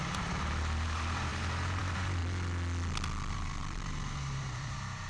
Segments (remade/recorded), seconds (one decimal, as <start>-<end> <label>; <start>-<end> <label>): 0.0-2.2 remade; 2.2-3.3 recorded; 3.3-5.1 remade